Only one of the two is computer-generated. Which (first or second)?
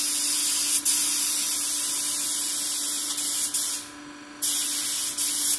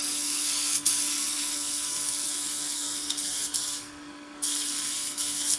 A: second